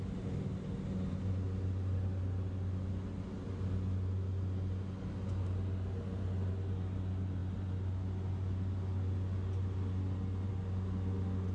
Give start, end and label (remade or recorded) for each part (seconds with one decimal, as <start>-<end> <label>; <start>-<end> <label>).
0.0-11.5 recorded